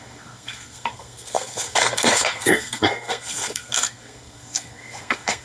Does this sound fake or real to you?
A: fake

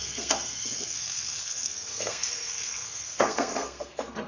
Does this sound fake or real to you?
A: fake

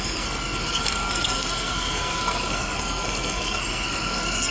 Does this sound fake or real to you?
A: fake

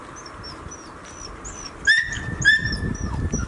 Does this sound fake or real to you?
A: real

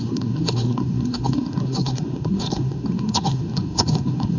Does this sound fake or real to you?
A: fake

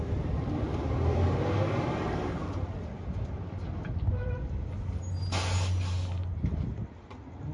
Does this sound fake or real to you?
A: real